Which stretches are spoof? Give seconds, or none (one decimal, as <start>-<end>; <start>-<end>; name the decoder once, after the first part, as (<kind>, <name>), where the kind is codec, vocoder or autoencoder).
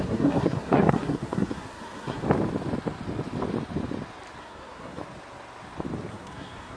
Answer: 0.0-2.2 (codec, SNAC); 4.4-5.0; 6.1-6.8